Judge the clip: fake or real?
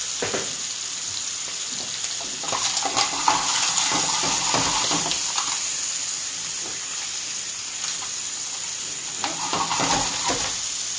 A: real